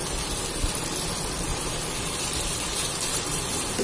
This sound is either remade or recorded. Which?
remade